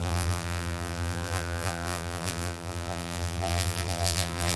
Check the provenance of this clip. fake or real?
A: fake